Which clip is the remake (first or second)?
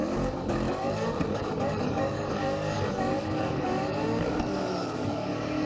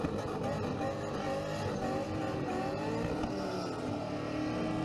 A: first